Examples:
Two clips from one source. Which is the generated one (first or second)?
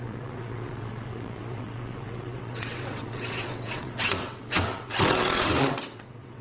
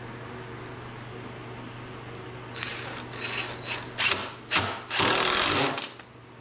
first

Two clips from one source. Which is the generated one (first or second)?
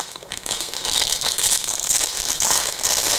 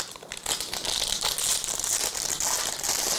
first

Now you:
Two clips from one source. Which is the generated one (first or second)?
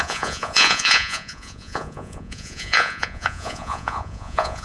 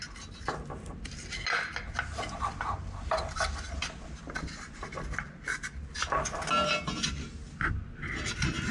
first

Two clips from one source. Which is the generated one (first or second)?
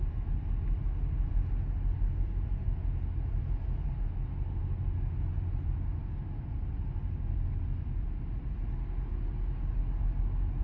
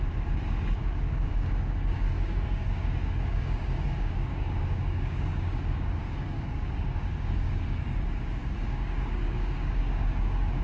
second